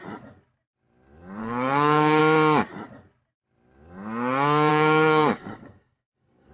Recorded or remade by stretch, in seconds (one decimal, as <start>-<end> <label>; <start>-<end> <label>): 0.0-1.4 recorded; 1.4-2.2 remade; 2.2-4.7 recorded; 4.7-6.5 remade